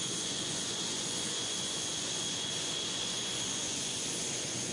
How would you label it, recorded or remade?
remade